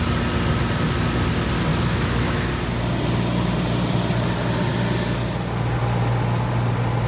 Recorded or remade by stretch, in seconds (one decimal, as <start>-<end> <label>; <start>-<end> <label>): 0.0-1.7 recorded; 1.7-2.5 remade; 2.5-7.1 recorded